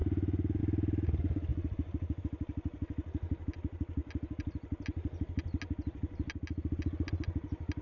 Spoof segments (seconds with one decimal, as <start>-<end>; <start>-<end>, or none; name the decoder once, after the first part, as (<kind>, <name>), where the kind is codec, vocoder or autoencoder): none